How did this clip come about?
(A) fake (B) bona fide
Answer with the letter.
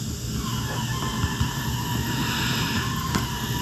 B